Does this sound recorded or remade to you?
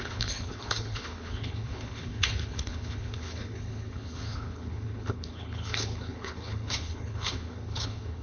remade